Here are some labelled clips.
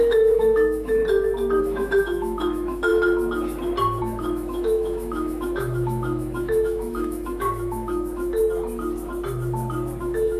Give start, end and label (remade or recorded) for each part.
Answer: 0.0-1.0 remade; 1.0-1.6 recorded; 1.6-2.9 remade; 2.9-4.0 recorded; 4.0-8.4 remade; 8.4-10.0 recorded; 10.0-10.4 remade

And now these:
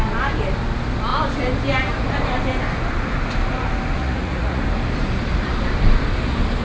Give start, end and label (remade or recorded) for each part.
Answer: 0.0-4.0 recorded; 4.0-4.6 remade; 4.6-6.6 recorded

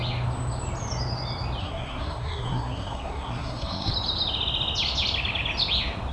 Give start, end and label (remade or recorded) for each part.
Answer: 0.0-1.6 recorded; 1.6-3.9 remade; 3.9-6.1 recorded

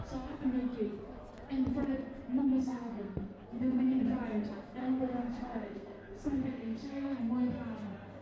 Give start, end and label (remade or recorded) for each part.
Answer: 0.0-2.6 recorded; 2.6-3.4 remade; 3.4-4.8 recorded; 4.8-7.2 remade; 7.2-8.2 recorded

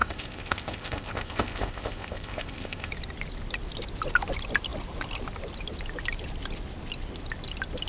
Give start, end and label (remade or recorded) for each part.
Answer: 0.0-2.9 remade; 2.9-7.9 recorded

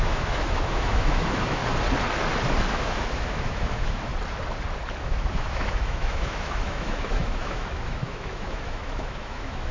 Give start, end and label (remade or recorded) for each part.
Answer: 0.0-1.6 remade; 1.6-2.7 recorded; 2.7-4.1 remade; 4.1-5.0 recorded; 5.0-9.7 remade